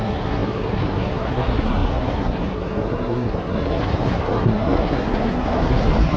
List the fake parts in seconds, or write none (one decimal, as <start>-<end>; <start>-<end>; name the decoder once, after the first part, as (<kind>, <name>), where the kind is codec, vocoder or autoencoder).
0.0-6.2 (codec, SNAC)